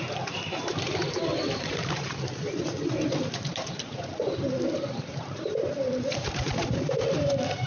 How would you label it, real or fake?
fake